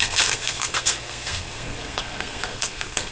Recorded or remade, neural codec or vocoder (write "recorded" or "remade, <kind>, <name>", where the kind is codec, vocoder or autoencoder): remade, codec, SNAC